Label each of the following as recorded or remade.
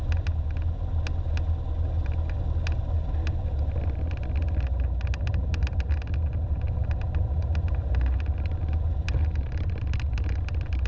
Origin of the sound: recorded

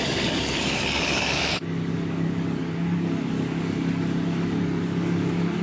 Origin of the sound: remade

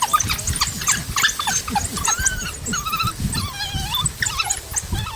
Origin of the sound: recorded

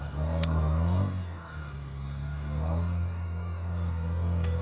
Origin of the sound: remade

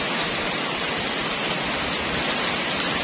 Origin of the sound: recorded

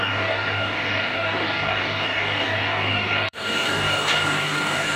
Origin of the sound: remade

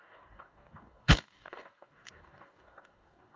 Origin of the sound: remade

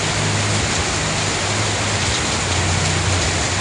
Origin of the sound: recorded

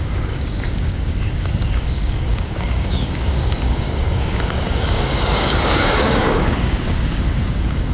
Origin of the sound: remade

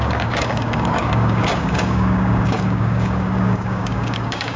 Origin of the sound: remade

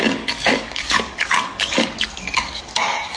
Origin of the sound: remade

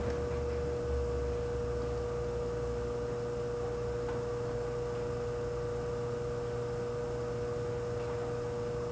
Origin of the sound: recorded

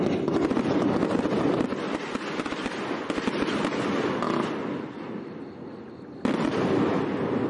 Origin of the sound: recorded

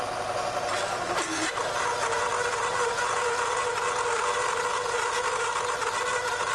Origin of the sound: recorded